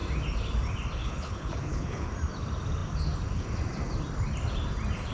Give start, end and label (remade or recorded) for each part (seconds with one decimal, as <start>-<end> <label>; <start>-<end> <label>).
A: 0.0-1.0 recorded; 1.0-2.1 remade; 2.1-5.1 recorded